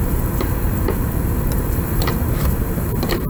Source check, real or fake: fake